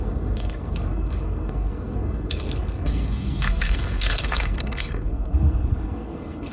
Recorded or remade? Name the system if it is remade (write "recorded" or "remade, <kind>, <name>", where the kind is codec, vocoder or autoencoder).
remade, codec, SNAC